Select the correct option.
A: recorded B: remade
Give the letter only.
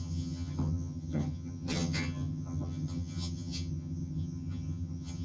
B